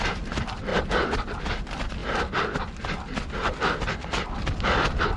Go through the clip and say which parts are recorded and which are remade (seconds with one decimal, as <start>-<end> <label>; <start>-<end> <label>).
0.0-5.2 recorded